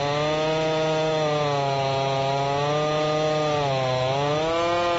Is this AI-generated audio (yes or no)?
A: no